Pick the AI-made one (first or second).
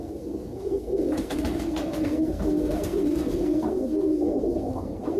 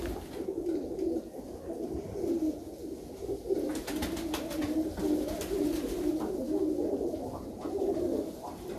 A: first